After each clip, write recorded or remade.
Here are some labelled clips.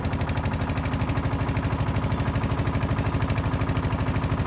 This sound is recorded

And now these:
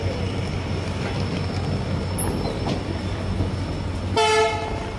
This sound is recorded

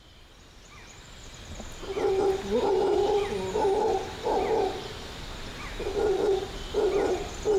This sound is recorded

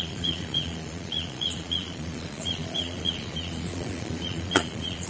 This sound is remade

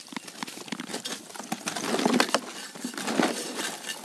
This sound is recorded